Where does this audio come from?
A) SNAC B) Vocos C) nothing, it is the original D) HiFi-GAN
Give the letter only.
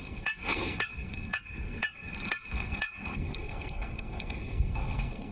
A